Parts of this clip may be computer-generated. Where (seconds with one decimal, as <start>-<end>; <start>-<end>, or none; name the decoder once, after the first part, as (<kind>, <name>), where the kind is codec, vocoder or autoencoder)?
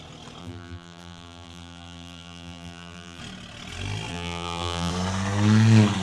0.4-3.2 (vocoder, BigVGAN v2); 4.1-4.9